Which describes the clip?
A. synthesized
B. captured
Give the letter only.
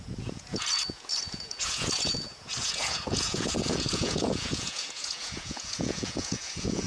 A